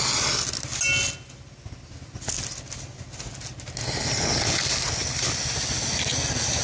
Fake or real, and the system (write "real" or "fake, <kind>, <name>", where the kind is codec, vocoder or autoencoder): real